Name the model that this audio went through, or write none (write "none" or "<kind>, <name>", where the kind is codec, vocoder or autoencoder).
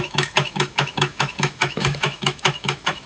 autoencoder, DAC-VAE